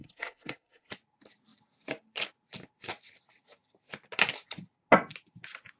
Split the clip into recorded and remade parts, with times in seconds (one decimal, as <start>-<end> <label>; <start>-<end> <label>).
0.0-0.9 remade; 0.9-5.8 recorded